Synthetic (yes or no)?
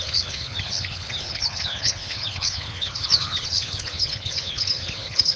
yes